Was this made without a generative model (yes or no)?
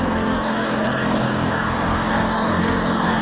no